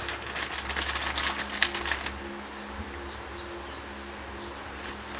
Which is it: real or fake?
real